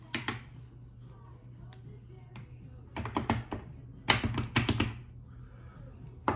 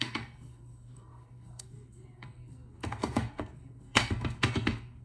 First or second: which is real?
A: first